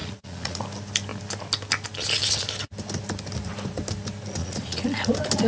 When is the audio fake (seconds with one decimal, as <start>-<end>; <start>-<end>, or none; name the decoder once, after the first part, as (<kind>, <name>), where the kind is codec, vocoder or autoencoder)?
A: 0.0-0.6 (vocoder, Vocos); 4.4-5.1